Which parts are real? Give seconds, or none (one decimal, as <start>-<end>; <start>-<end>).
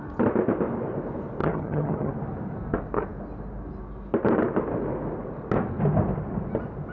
0.0-1.4; 2.1-6.9